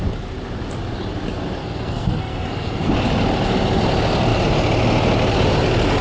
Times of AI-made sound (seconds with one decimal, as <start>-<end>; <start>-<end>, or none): 1.6-2.9